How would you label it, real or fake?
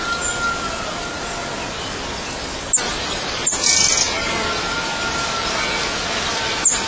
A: real